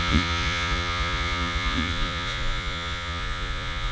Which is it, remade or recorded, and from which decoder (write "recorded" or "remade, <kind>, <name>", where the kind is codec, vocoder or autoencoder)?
remade, vocoder, Vocos